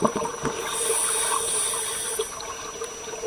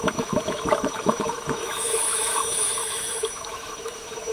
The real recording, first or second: first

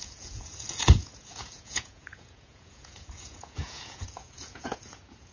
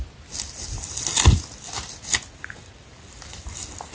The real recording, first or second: second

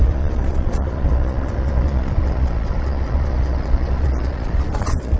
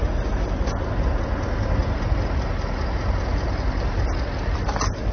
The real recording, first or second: second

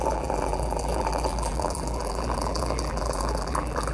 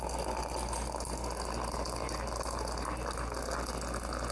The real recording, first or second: second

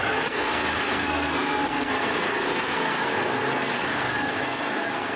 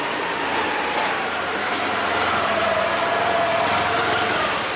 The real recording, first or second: second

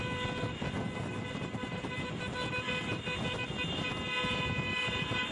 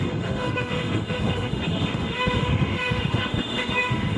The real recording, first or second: first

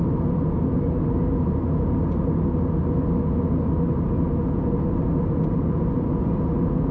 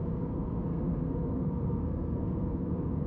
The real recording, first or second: first